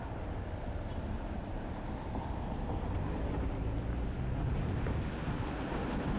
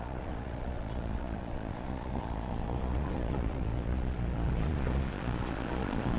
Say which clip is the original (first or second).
first